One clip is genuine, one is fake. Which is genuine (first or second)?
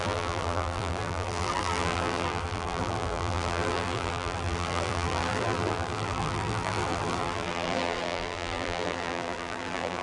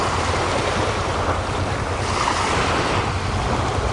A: second